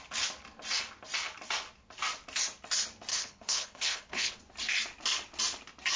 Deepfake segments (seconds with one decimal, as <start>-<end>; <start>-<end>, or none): 3.1-4.4